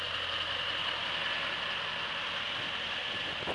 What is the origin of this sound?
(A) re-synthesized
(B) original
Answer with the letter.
B